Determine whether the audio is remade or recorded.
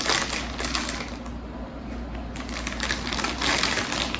recorded